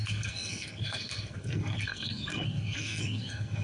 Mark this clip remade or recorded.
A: remade